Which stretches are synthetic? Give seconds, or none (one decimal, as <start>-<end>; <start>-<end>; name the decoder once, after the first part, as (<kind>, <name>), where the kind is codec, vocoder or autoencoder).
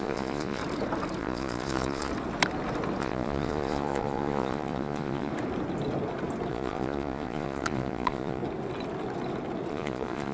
0.0-0.6 (vocoder, Vocos); 1.2-2.1; 3.0-5.3; 6.5-8.4; 9.7-10.3